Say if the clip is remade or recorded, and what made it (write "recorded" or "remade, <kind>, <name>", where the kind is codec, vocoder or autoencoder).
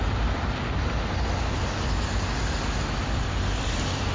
recorded